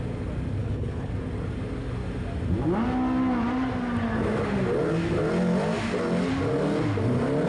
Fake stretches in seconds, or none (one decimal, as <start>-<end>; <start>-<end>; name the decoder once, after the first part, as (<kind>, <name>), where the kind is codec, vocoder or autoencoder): 0.6-1.1 (codec, HILCodec)